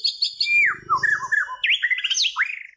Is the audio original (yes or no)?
yes